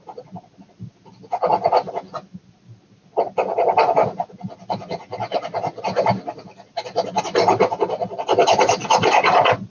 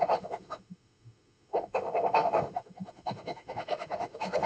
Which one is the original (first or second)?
first